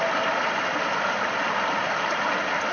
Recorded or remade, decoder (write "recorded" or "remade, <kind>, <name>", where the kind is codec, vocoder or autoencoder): recorded